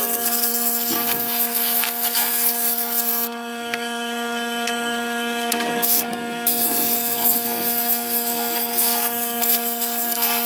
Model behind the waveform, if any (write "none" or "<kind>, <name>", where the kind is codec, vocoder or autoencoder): codec, SNAC